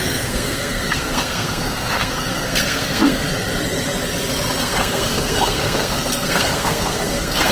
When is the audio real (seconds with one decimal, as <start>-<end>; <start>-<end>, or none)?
3.3-4.6